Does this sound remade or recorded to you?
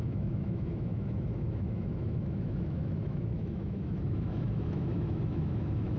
remade